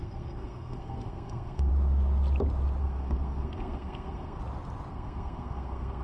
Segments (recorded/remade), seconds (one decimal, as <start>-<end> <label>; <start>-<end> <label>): 0.0-1.7 remade; 1.7-2.8 recorded; 2.8-4.4 remade; 4.4-4.9 recorded; 4.9-6.0 remade